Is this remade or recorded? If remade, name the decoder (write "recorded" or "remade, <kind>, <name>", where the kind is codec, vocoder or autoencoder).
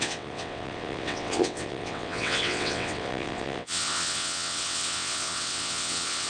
remade, vocoder, WaveNeXt